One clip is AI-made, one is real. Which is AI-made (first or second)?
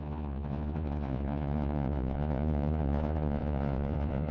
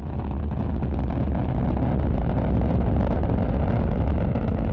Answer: first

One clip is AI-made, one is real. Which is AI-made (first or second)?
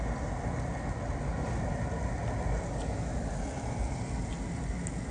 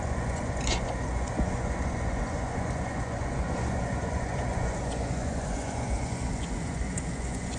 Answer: second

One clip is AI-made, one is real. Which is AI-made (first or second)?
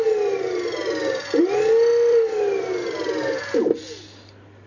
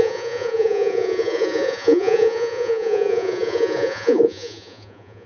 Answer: second